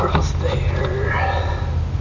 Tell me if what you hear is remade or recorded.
recorded